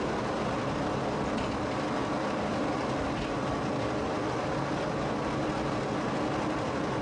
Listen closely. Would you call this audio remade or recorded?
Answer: recorded